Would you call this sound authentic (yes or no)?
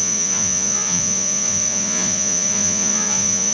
no